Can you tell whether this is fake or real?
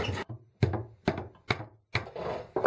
real